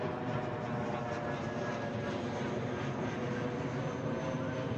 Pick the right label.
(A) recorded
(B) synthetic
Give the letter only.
A